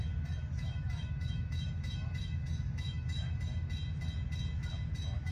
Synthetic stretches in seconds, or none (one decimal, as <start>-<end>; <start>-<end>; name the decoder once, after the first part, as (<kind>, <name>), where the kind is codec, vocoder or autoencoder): 0.5-3.7 (autoencoder, DAC-VAE)